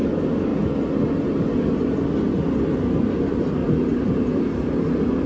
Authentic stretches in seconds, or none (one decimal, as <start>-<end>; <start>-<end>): 0.0-5.3